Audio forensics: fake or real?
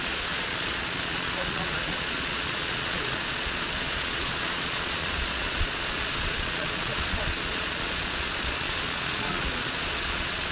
fake